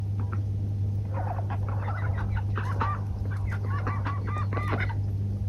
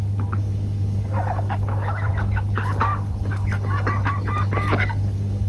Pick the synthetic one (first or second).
second